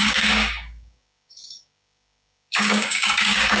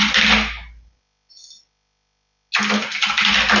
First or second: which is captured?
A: second